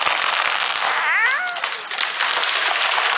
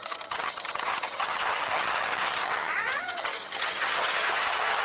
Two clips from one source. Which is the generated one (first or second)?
second